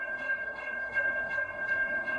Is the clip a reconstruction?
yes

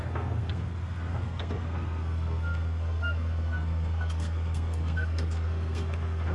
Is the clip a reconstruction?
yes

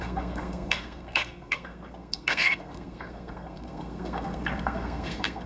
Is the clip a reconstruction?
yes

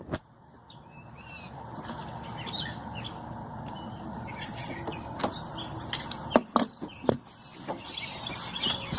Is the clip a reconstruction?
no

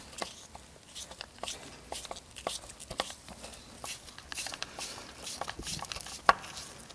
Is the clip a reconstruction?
no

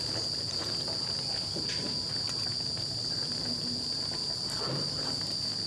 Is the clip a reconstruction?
no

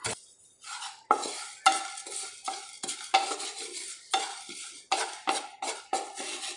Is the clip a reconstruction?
no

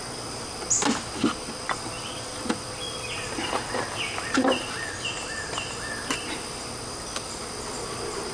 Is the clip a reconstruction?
no